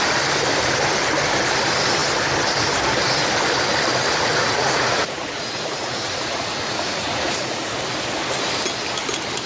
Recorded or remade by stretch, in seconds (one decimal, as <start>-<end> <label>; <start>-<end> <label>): 0.0-4.4 recorded; 4.4-7.6 remade; 7.6-9.5 recorded